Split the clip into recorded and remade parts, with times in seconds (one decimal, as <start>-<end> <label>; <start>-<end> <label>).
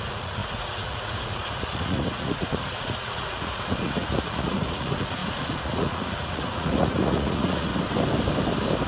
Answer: 0.0-7.7 remade; 7.7-8.9 recorded